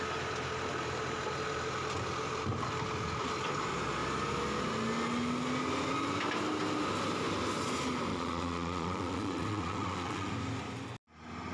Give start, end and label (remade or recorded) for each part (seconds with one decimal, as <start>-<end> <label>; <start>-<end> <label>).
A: 0.0-8.1 recorded; 8.1-10.3 remade; 10.3-11.5 recorded